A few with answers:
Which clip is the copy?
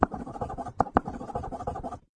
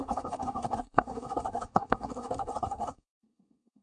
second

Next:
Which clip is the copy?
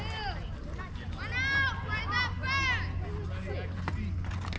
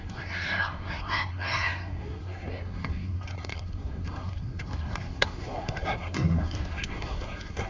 second